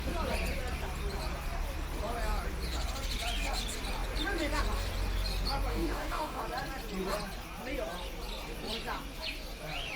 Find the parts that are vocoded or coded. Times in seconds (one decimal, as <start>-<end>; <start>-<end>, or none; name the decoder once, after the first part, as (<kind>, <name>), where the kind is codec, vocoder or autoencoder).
5.7-6.4 (codec, DAC)